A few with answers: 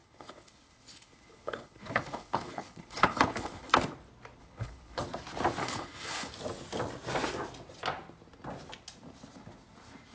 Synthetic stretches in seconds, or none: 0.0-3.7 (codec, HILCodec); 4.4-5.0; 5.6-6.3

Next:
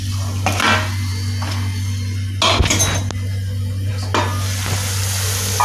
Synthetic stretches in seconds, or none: none